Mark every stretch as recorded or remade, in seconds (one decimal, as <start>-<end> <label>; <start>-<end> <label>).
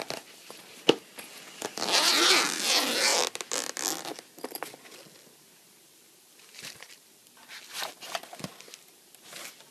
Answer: 0.0-9.7 recorded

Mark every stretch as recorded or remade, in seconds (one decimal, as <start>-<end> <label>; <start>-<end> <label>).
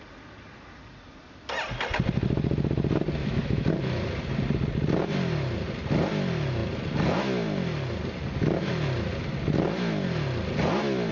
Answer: 0.0-3.2 recorded; 3.2-3.7 remade; 3.7-11.1 recorded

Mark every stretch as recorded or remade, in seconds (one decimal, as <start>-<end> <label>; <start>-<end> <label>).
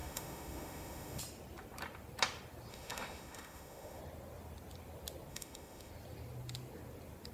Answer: 0.0-1.2 remade; 1.2-2.7 recorded; 2.7-4.0 remade; 4.0-5.3 recorded; 5.3-5.9 remade; 5.9-7.3 recorded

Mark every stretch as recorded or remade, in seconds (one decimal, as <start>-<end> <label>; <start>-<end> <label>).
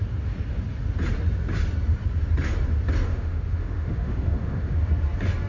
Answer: 0.0-3.1 recorded; 3.1-4.9 remade; 4.9-5.5 recorded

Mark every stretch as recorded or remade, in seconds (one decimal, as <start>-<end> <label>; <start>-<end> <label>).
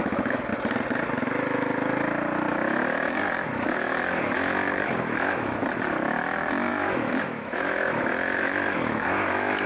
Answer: 0.0-0.5 remade; 0.5-2.5 recorded; 2.5-9.7 remade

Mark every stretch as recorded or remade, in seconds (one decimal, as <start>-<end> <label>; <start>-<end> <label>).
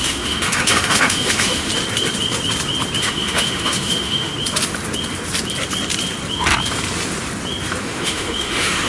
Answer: 0.0-1.7 remade; 1.7-3.0 recorded; 3.0-4.3 remade; 4.3-7.8 recorded; 7.8-8.9 remade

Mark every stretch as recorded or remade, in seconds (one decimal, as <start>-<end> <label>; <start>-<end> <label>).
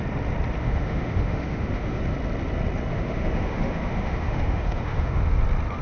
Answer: 0.0-0.6 recorded; 0.6-2.0 remade; 2.0-2.9 recorded; 2.9-5.2 remade; 5.2-5.8 recorded